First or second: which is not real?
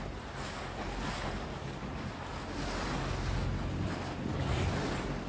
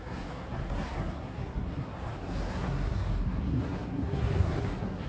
second